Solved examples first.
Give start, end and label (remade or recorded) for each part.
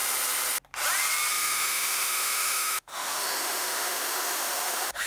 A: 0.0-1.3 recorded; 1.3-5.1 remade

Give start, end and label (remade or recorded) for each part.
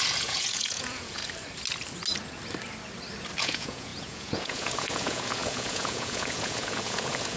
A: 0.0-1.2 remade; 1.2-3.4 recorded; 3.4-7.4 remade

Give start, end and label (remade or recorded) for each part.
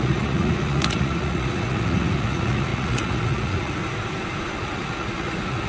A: 0.0-3.8 remade; 3.8-4.6 recorded; 4.6-5.7 remade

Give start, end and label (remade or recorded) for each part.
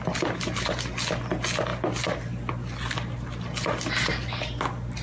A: 0.0-5.0 recorded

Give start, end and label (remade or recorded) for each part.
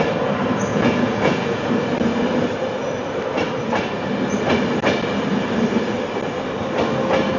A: 0.0-0.7 recorded; 0.7-1.7 remade; 1.7-7.4 recorded